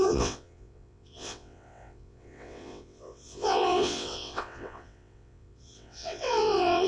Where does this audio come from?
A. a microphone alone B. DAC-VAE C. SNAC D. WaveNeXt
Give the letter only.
D